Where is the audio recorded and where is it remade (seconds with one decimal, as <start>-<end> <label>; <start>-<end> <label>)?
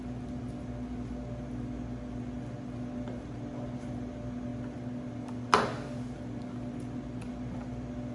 0.0-8.1 recorded